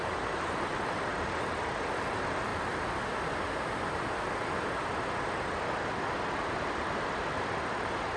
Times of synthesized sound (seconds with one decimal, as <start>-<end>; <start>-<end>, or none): 0.0-1.1; 2.0-2.5; 6.4-8.2